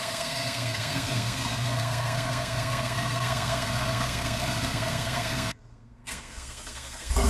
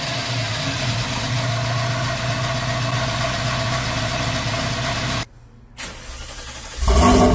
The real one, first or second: second